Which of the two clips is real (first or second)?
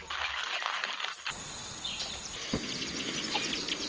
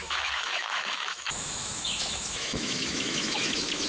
first